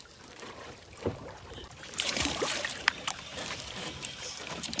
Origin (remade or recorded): remade